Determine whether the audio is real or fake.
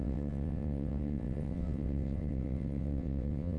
fake